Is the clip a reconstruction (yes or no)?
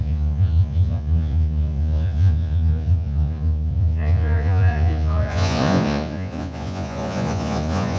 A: yes